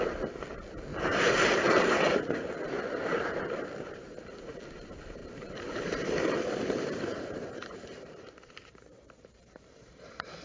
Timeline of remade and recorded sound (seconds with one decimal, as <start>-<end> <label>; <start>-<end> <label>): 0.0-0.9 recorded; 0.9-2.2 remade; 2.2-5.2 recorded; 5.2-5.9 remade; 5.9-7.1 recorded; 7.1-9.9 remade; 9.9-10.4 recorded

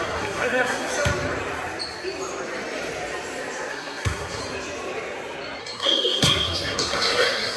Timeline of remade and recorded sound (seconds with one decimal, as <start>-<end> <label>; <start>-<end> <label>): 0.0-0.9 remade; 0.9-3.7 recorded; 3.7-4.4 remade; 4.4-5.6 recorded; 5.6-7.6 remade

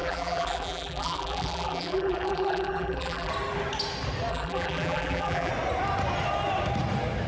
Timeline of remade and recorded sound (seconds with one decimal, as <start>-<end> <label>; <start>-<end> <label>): 0.0-3.3 remade; 3.3-4.3 recorded; 4.3-5.5 remade; 5.5-7.3 recorded

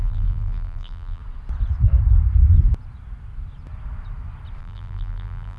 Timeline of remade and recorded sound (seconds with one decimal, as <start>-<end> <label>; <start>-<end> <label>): 0.0-1.2 remade; 1.2-4.6 recorded; 4.6-5.6 remade

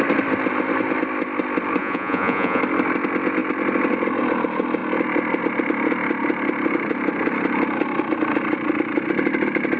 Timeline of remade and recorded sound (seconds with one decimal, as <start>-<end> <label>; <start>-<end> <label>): 0.0-1.8 recorded; 1.8-2.6 remade; 2.6-9.8 recorded